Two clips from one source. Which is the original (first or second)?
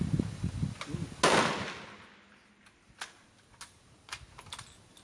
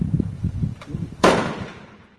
first